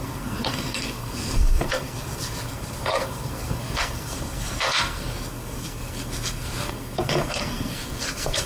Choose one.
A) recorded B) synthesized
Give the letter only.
B